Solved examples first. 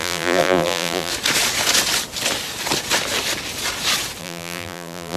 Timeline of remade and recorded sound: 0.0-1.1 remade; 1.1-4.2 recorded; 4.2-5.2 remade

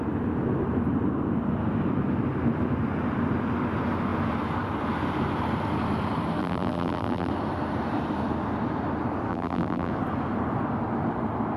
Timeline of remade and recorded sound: 0.0-6.4 recorded; 6.4-7.3 remade; 7.3-9.3 recorded; 9.3-9.9 remade; 9.9-11.6 recorded

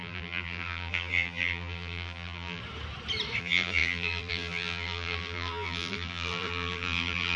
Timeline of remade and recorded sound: 0.0-2.6 remade; 2.6-3.4 recorded; 3.4-7.4 remade

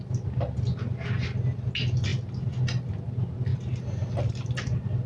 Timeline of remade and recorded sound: 0.0-2.1 recorded; 2.1-2.9 remade; 2.9-3.5 recorded; 3.5-4.5 remade; 4.5-5.1 recorded

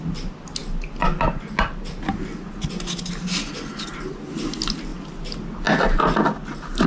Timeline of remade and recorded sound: 0.0-6.9 recorded

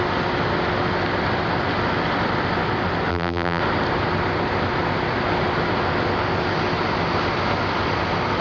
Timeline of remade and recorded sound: 0.0-3.1 recorded; 3.1-3.6 remade; 3.6-8.4 recorded